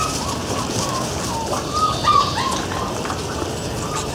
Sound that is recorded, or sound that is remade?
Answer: recorded